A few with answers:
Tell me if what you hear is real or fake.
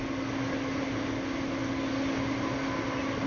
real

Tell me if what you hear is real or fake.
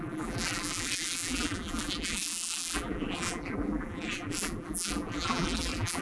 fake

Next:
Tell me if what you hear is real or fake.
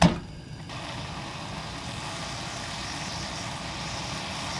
real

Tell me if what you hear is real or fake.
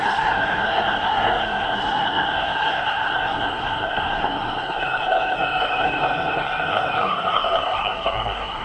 fake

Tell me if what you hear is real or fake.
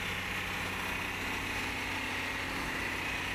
real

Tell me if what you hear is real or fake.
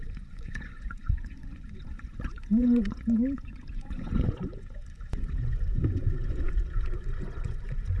fake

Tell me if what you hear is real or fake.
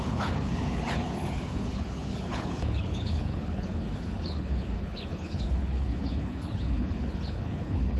fake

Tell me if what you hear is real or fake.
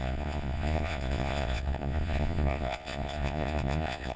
fake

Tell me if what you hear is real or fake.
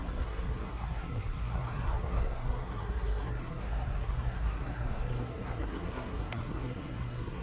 fake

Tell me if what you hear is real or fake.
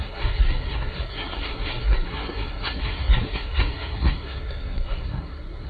fake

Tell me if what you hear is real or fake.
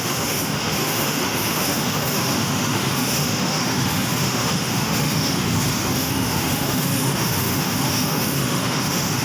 fake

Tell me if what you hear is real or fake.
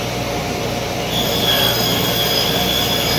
real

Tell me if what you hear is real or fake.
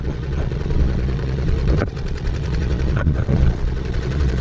fake